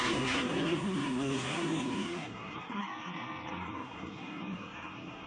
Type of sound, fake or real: fake